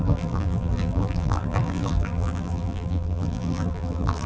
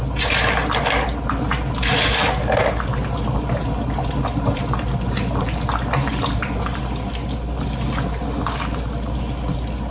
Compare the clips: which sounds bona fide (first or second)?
second